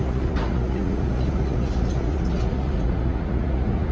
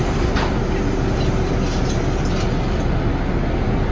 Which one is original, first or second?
second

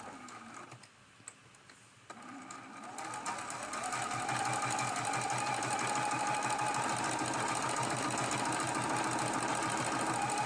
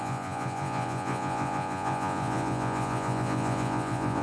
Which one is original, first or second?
first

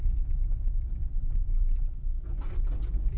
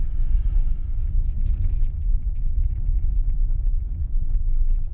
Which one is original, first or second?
first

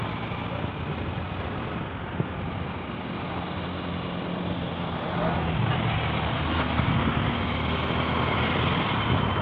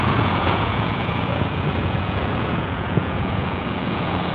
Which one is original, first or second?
first